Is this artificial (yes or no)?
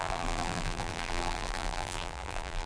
yes